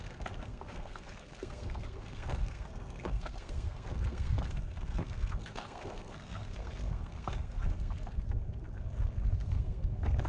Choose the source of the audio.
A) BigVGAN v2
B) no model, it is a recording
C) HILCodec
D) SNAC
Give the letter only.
D